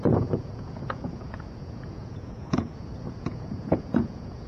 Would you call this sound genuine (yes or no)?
no